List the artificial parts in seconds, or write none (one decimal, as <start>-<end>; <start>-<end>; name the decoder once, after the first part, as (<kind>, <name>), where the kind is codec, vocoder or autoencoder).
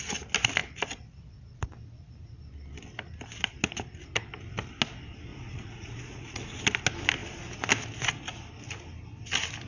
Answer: 5.3-6.4 (vocoder, Vocos)